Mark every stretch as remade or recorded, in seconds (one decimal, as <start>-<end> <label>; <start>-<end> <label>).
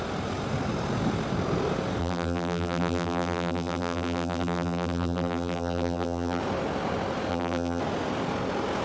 0.0-2.0 recorded; 2.0-6.4 remade; 6.4-7.3 recorded; 7.3-7.8 remade; 7.8-8.8 recorded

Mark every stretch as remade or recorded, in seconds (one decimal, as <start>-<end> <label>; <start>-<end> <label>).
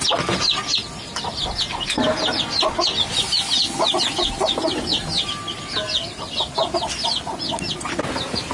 0.0-8.5 recorded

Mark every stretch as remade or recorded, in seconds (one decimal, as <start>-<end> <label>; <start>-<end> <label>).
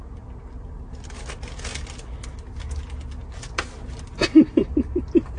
0.0-5.4 recorded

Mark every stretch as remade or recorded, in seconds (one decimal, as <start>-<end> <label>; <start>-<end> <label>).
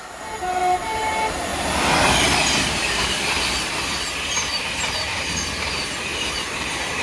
0.0-1.5 remade; 1.5-2.6 recorded; 2.6-7.0 remade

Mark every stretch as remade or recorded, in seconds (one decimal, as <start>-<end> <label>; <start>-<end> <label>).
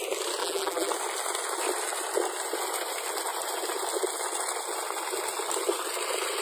0.0-0.4 recorded; 0.4-0.9 remade; 0.9-6.4 recorded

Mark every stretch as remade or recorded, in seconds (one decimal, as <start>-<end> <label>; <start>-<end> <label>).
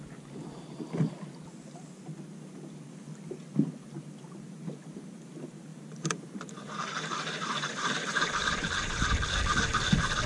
0.0-5.7 recorded; 5.7-9.3 remade; 9.3-10.3 recorded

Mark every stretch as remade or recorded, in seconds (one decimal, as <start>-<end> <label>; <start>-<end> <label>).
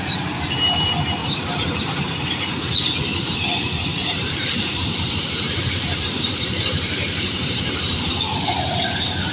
0.0-1.2 recorded; 1.2-2.4 remade; 2.4-3.9 recorded; 3.9-8.1 remade; 8.1-9.3 recorded